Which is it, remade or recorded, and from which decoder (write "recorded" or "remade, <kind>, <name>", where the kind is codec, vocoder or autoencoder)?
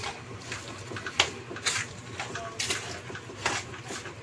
recorded